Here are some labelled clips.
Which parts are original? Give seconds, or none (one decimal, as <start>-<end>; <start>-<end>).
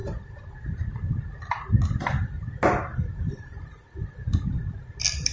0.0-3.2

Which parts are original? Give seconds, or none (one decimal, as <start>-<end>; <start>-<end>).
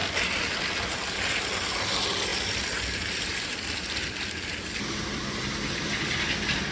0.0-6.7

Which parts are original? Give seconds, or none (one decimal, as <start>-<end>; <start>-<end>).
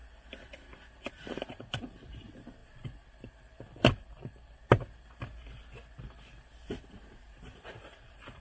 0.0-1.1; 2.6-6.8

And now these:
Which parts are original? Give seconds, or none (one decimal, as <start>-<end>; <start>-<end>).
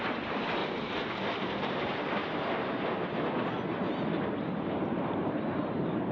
0.6-1.6; 2.2-4.3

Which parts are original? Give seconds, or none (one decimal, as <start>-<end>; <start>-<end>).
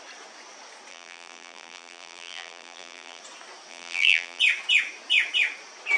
0.0-0.9; 3.2-3.7; 4.4-6.0